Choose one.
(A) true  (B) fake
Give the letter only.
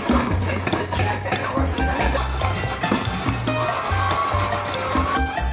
A